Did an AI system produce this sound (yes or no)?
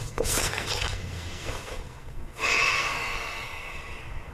yes